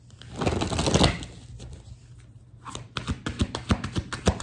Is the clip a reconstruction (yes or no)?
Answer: no